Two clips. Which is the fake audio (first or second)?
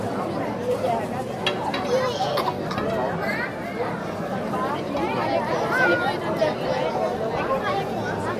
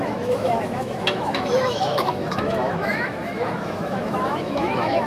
second